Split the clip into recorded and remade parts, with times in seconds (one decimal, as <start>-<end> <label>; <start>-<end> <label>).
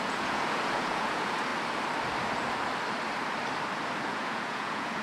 0.0-1.5 remade; 1.5-4.0 recorded; 4.0-5.0 remade